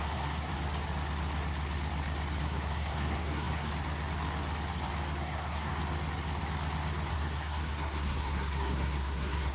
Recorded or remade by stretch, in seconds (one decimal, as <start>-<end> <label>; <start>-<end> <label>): 0.0-0.5 remade; 0.5-2.4 recorded; 2.4-3.7 remade; 3.7-5.2 recorded; 5.2-5.7 remade; 5.7-7.1 recorded; 7.1-9.5 remade